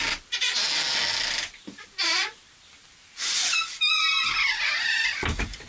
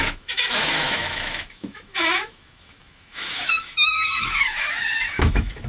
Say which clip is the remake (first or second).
second